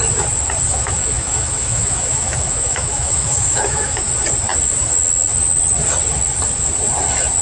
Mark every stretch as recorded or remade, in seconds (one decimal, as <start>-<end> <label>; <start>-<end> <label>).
0.0-0.7 recorded; 0.7-4.1 remade; 4.1-7.4 recorded